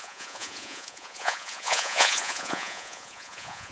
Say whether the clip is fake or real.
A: fake